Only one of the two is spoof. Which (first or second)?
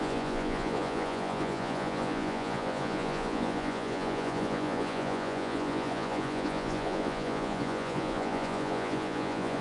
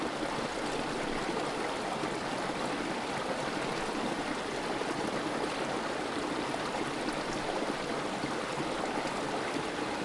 first